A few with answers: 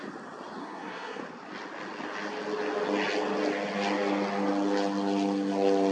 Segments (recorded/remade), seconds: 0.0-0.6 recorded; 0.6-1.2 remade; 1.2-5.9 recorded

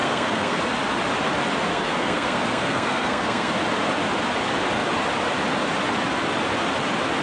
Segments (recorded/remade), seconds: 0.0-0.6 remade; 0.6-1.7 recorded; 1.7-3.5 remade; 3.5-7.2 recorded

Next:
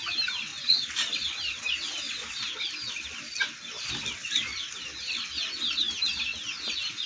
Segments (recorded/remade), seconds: 0.0-7.1 recorded

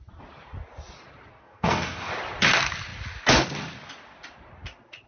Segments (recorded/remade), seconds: 0.0-1.3 recorded; 1.3-2.1 remade; 2.1-5.1 recorded

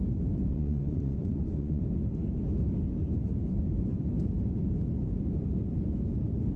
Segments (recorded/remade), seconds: 0.0-0.5 recorded; 0.5-1.8 remade; 1.8-6.6 recorded